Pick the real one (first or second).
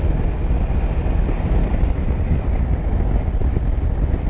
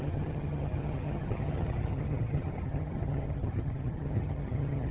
first